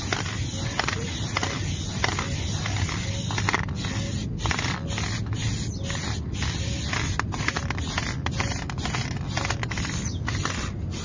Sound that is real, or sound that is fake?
real